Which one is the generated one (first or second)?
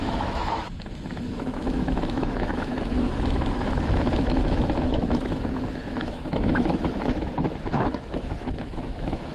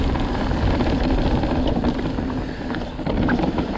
first